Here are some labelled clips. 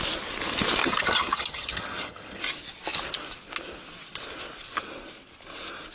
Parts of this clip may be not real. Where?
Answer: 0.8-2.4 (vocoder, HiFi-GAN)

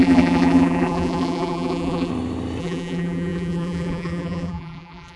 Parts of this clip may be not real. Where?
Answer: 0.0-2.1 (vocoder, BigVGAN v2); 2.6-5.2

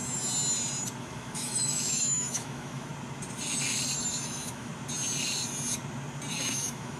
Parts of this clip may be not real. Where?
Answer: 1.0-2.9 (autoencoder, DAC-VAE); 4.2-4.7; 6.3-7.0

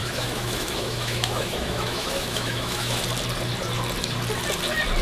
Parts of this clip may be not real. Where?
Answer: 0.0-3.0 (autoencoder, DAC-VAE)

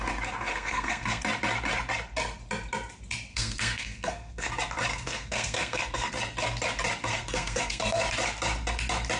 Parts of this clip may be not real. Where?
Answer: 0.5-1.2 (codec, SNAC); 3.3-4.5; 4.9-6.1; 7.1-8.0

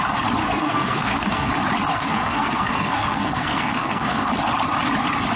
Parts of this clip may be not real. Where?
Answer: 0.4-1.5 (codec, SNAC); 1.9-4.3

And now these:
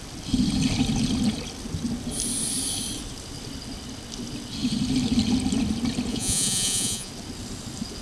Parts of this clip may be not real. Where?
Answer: 6.1-7.1 (vocoder, Vocos)